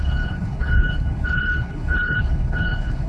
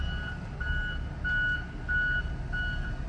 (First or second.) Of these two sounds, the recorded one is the second